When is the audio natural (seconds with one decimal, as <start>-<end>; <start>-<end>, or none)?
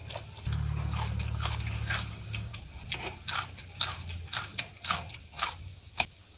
0.0-2.1; 2.5-5.6